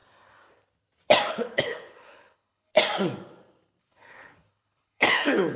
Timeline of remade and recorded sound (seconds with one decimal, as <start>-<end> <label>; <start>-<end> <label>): 0.0-1.3 recorded; 1.3-2.7 remade; 2.7-3.8 recorded; 3.8-5.6 remade